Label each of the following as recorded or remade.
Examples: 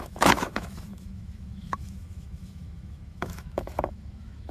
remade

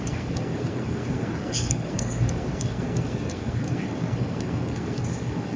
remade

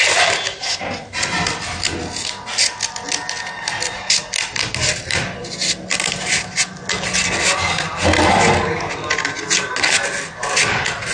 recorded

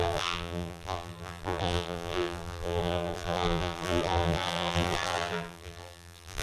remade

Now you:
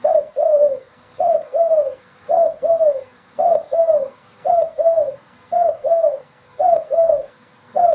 remade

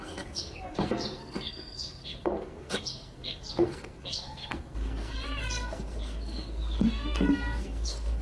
remade